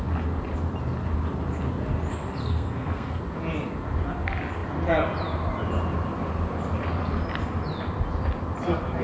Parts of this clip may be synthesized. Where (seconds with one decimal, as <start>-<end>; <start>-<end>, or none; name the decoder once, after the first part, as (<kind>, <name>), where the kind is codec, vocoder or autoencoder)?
2.4-3.2 (codec, SNAC)